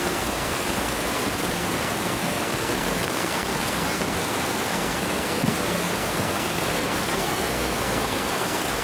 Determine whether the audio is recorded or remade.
remade